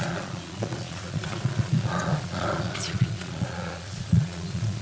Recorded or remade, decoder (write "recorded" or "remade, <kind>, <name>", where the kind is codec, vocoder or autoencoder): remade, vocoder, Vocos